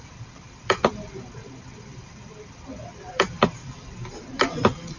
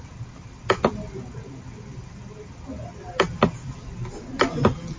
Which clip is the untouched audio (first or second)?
second